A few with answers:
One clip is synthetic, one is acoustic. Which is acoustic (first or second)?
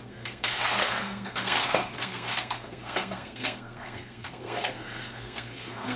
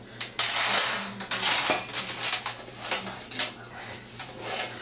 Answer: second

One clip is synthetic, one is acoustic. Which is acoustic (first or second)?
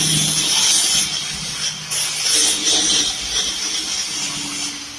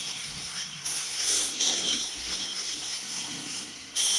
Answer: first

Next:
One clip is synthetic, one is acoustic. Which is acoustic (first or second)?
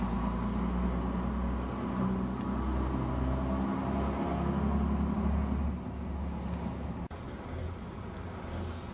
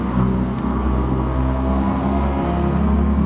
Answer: first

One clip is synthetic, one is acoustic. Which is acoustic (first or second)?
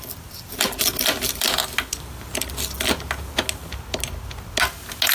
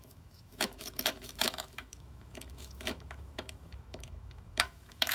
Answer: first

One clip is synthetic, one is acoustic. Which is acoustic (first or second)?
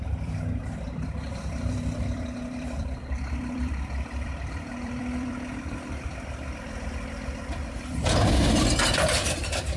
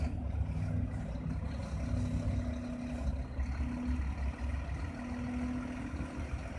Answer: second